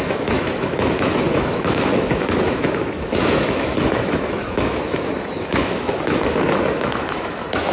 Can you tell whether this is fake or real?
fake